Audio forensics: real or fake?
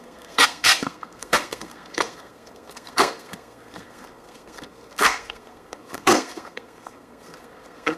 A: fake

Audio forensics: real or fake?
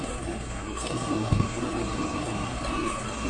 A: fake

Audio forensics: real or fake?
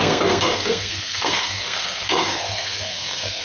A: fake